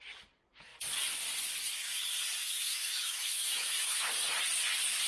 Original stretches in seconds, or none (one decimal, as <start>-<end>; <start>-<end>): 0.0-2.4; 4.1-5.1